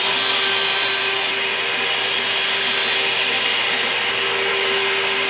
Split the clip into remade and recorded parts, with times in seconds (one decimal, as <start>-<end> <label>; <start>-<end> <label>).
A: 0.0-5.3 recorded